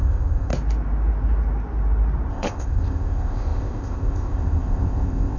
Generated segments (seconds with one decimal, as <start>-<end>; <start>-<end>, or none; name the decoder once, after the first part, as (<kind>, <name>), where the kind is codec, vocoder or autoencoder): 0.0-0.5 (codec, ZipCodec); 2.3-5.4